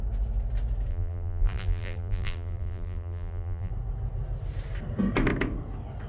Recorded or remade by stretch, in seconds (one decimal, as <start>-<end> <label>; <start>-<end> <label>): 0.0-0.9 recorded; 0.9-3.7 remade; 3.7-6.1 recorded